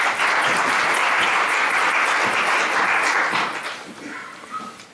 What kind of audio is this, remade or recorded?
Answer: recorded